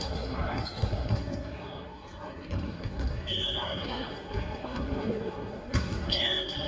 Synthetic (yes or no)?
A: yes